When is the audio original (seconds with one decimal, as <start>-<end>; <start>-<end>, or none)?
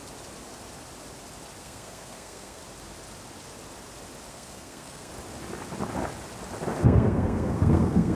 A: 0.0-1.6; 2.6-4.3; 5.1-6.8